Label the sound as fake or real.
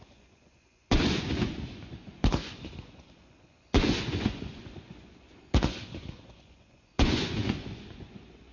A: fake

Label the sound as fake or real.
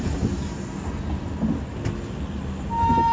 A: real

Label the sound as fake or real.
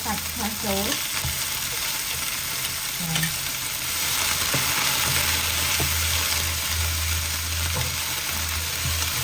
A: real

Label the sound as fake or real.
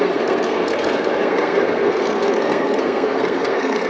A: fake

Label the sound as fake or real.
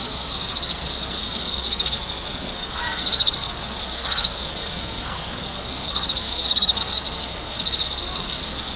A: fake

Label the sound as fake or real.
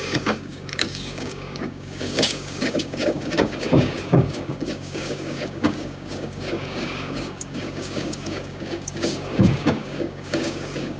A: fake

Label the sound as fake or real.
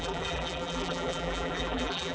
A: fake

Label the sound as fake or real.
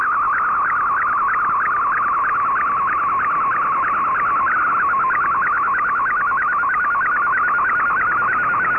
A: real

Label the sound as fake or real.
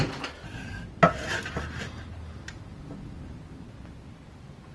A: real